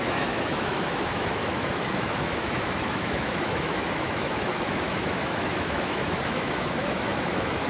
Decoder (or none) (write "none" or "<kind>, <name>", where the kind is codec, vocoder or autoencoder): autoencoder, DAC-VAE